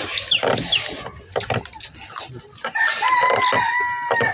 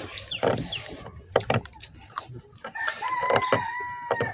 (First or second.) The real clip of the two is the first